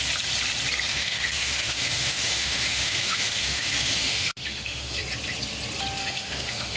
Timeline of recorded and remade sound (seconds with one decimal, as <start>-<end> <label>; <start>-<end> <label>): 0.0-0.9 recorded; 0.9-5.0 remade; 5.0-6.0 recorded; 6.0-6.8 remade